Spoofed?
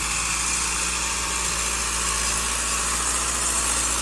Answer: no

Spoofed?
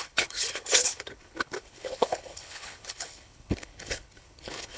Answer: yes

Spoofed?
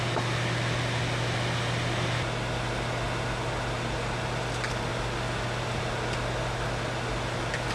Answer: no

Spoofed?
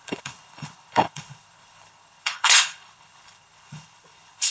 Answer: yes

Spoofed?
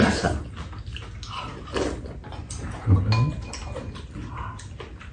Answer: no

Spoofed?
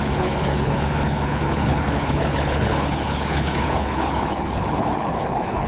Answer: yes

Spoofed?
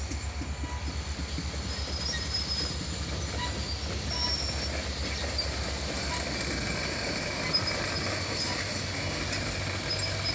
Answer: no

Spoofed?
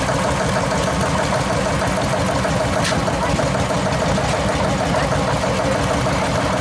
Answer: no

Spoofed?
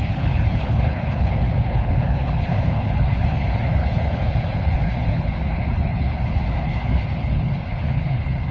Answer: yes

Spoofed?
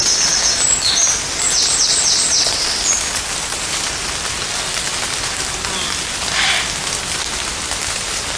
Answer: no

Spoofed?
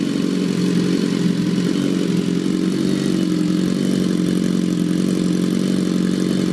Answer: no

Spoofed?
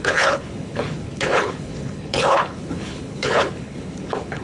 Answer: yes